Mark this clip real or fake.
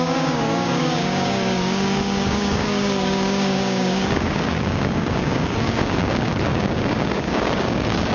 fake